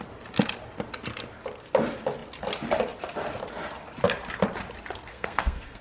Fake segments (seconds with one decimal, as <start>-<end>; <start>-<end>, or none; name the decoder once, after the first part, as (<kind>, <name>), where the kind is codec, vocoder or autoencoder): 5.1-5.8 (codec, SNAC)